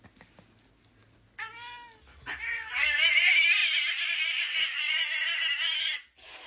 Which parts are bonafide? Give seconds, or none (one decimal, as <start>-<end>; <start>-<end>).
0.0-3.6; 5.0-6.5

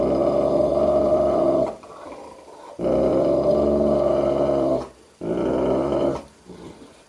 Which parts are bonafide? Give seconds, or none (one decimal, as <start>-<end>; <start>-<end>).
0.0-0.7; 1.4-3.1